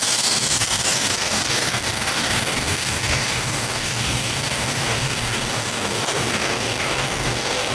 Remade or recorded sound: remade